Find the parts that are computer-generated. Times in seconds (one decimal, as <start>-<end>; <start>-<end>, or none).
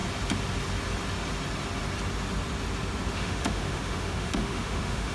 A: 3.1-5.1